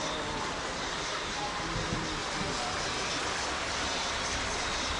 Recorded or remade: recorded